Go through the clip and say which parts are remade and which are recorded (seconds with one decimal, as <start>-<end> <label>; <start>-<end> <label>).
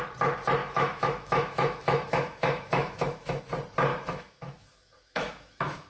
0.0-0.6 recorded; 0.6-3.4 remade; 3.4-3.9 recorded; 3.9-5.9 remade